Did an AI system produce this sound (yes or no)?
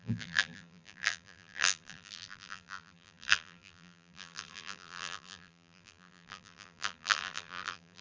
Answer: yes